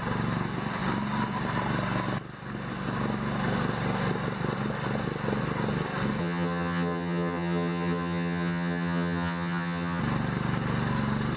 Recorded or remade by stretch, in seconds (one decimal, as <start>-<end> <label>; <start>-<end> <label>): 0.0-6.2 recorded; 6.2-10.0 remade; 10.0-11.4 recorded